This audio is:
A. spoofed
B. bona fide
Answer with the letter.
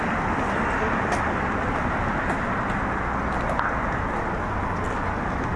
B